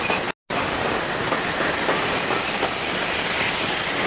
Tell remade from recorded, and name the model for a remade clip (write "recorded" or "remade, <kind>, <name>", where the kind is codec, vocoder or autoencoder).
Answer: recorded